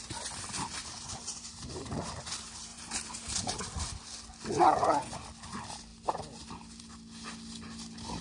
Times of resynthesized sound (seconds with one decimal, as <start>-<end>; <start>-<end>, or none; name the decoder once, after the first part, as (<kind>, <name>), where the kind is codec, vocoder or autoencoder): 0.8-2.1 (vocoder, BigVGAN v2); 2.7-3.6